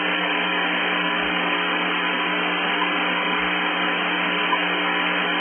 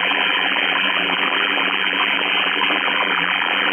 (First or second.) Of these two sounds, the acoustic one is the first